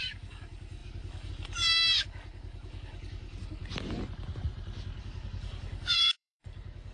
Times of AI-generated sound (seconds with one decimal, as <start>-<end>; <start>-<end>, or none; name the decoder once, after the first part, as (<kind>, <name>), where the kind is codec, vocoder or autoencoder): 0.0-3.6 (codec, DAC); 5.0-6.9

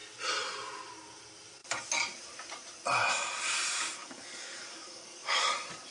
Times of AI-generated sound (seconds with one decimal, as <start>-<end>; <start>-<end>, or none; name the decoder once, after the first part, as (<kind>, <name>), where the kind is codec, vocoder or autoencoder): 4.0-5.4 (codec, DAC)

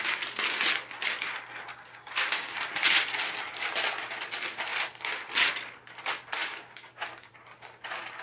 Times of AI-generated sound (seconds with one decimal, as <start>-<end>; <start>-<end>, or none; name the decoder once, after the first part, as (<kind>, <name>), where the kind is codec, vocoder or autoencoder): 1.7-2.6 (codec, DAC); 6.4-7.3

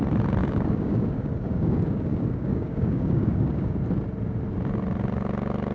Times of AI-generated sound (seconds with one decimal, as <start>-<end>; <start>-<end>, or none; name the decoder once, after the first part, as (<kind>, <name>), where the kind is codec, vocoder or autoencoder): 0.4-3.8 (codec, DAC)

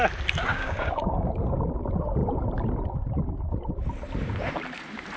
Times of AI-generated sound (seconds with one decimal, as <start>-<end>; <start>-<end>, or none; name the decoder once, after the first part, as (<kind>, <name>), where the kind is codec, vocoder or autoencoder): 0.5-1.3 (codec, DAC)

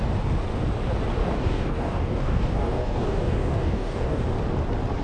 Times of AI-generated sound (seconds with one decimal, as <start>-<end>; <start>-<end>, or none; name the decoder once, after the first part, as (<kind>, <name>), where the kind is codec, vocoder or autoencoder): 1.2-4.2 (codec, DAC)

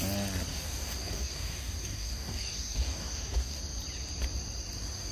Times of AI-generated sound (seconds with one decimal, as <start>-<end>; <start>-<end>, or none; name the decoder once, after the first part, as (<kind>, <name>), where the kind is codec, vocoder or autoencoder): 0.5-3.6 (codec, DAC)

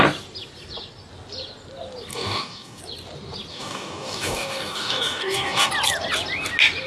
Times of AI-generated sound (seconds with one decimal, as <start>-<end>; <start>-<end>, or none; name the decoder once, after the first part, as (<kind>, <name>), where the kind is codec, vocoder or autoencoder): 2.1-2.8 (codec, DAC); 3.5-5.7